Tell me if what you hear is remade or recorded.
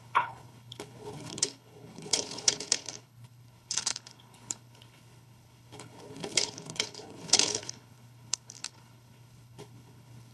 remade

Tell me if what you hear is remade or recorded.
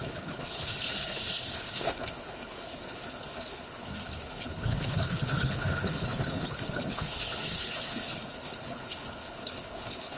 remade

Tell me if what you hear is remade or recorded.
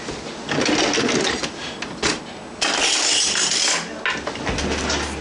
recorded